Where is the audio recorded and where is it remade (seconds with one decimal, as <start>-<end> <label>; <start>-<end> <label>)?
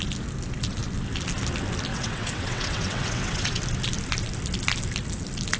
0.0-1.9 recorded; 1.9-3.6 remade; 3.6-5.6 recorded